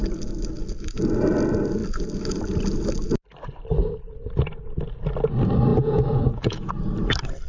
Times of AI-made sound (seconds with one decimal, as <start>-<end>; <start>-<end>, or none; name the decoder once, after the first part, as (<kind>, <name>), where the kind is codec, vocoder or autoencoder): 5.7-6.7 (vocoder, Vocos)